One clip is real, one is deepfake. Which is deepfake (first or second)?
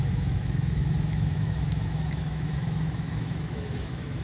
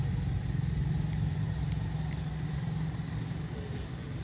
first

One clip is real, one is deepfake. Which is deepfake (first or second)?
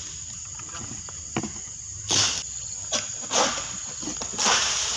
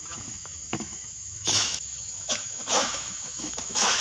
second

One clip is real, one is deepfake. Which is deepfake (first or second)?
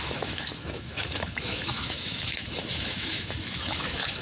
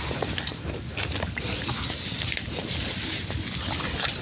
first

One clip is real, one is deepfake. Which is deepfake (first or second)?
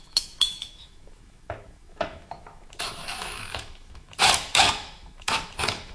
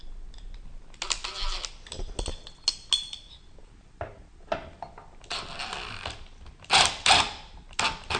first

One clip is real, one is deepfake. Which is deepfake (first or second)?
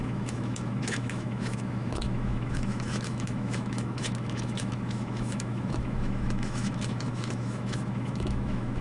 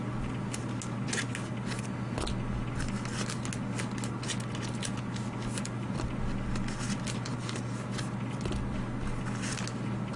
first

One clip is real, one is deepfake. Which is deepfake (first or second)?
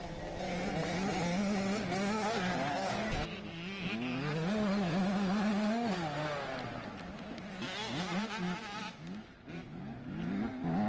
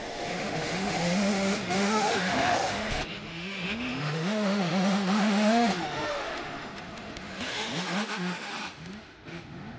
second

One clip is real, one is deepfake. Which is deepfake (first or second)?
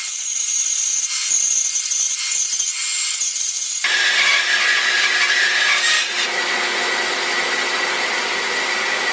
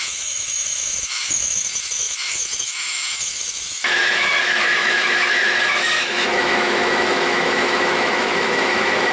second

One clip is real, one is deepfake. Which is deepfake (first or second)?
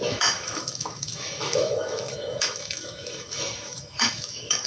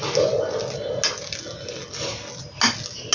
first